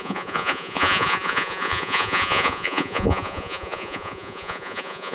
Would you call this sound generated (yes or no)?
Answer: yes